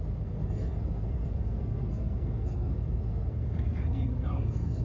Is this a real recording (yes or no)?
no